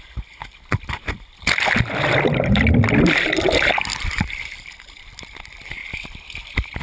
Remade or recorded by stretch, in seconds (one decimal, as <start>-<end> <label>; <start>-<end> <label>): 0.0-6.8 recorded